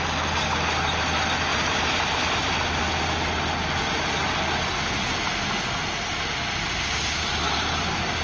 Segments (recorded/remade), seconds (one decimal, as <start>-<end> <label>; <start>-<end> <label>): 0.0-1.5 recorded; 1.5-2.5 remade; 2.5-8.2 recorded